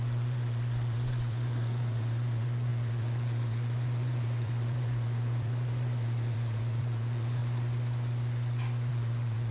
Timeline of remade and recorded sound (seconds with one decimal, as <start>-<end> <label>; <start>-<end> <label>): 0.0-7.4 remade; 7.4-8.9 recorded; 8.9-9.5 remade